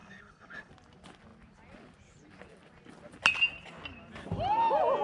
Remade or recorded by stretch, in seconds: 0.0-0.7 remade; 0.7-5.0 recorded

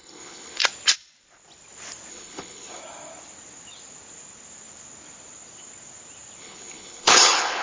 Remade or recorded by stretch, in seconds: 0.0-0.6 remade; 0.6-2.1 recorded; 2.1-2.8 remade; 2.8-6.4 recorded; 6.4-7.6 remade

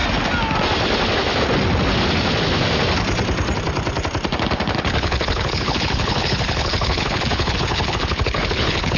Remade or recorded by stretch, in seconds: 0.0-4.8 recorded; 4.8-9.0 remade

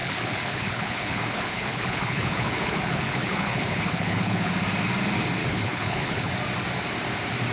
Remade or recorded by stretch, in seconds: 0.0-4.5 remade; 4.5-5.4 recorded; 5.4-6.3 remade; 6.3-7.5 recorded

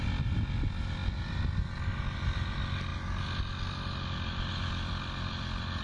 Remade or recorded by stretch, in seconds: 0.0-5.8 recorded